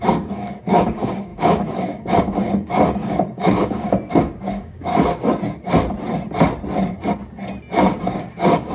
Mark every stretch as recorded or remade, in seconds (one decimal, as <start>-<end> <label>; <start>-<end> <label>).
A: 0.0-4.9 remade; 4.9-8.0 recorded; 8.0-8.7 remade